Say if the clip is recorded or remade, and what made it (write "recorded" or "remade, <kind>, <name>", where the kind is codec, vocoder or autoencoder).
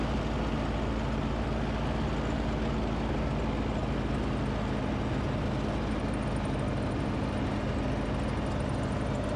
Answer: recorded